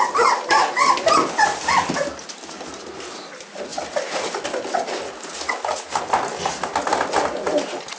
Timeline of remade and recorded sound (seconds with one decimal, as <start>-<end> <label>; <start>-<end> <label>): 0.0-3.7 recorded; 3.7-4.9 remade; 4.9-6.9 recorded; 6.9-7.6 remade; 7.6-8.0 recorded